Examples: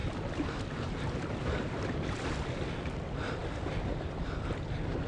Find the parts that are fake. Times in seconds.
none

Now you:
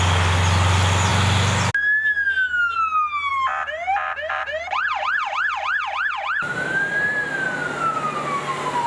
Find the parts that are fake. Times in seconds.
3.3-7.1 (vocoder, BigVGAN v2)

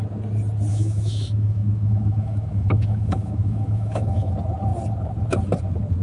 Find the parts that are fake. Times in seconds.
0.7-4.3 (autoencoder, DAC-VAE)

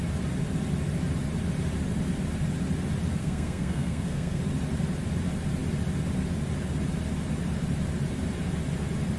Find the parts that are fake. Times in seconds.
3.2-4.4 (codec, SNAC)

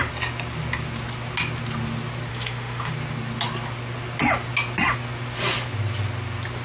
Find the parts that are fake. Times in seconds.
2.3-2.9 (autoencoder, DAC-VAE)

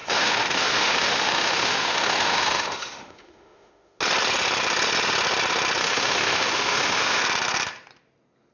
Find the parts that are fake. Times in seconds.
0.0-4.0 (autoencoder, DAC-VAE); 5.8-7.2

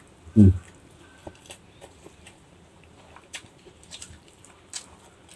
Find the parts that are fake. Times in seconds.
1.2-4.4 (vocoder, BigVGAN v2)